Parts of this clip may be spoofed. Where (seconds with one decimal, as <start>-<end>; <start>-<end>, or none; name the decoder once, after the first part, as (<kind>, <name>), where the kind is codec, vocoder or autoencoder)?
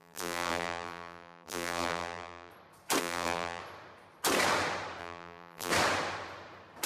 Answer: 0.0-2.5 (vocoder, BigVGAN v2); 3.0-3.6; 5.0-5.7